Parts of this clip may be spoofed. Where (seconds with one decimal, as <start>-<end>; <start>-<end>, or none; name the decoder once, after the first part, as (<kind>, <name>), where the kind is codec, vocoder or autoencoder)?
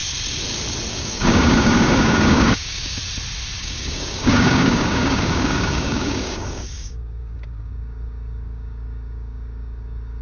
0.9-3.0 (codec, DAC); 3.6-10.2